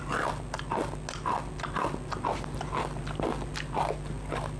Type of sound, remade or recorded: recorded